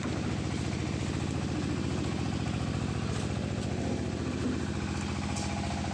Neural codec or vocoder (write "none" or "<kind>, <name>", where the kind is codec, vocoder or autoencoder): none